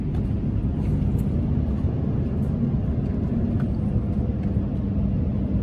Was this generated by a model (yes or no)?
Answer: no